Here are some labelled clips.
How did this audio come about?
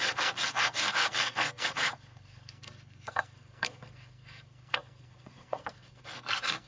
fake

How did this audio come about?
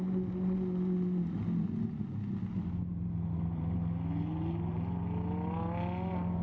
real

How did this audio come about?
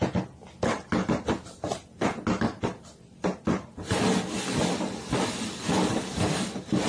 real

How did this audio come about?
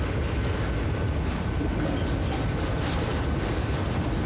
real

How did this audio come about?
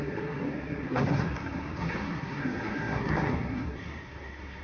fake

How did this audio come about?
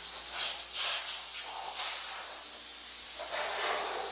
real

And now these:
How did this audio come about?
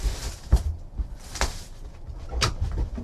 real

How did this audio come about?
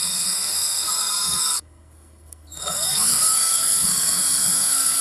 fake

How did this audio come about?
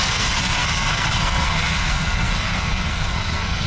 fake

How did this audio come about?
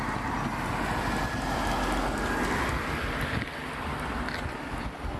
real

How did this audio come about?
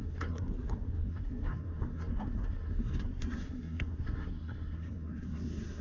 fake